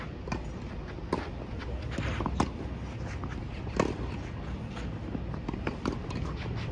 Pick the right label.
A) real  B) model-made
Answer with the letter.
A